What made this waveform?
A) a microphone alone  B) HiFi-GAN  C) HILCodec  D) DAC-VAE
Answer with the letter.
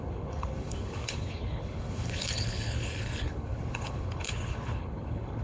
C